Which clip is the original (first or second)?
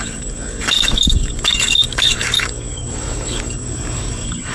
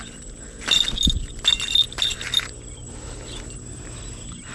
second